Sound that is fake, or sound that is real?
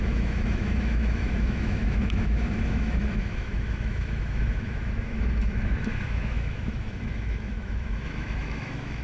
fake